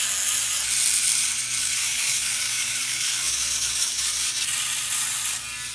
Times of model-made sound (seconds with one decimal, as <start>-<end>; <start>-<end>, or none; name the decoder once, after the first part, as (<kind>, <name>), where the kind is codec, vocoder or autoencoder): 1.6-4.3 (codec, DAC)